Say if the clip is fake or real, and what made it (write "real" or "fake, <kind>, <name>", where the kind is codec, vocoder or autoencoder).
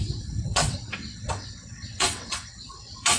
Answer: fake, vocoder, WaveNeXt